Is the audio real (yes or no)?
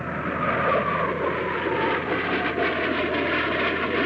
yes